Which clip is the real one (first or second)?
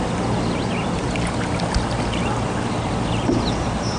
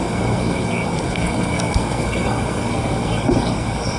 first